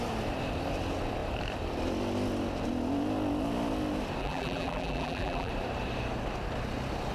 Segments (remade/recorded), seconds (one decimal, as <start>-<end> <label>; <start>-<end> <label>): 0.0-4.2 recorded; 4.2-5.5 remade; 5.5-7.1 recorded